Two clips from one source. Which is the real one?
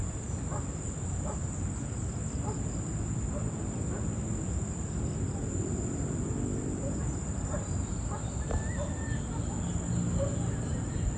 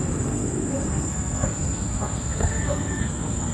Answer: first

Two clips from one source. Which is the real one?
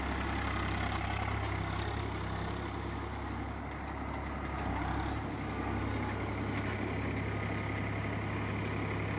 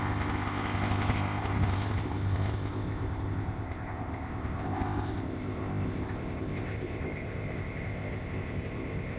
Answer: first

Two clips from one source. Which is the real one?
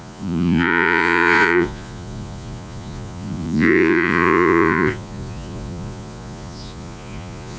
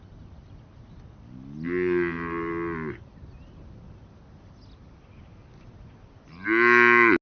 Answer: second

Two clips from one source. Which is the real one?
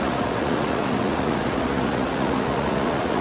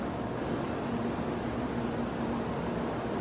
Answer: second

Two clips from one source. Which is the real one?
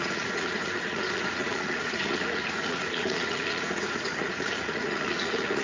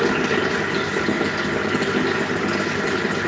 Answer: second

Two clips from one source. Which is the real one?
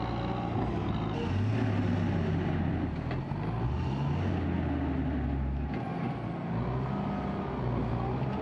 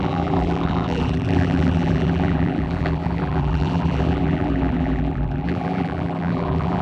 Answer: first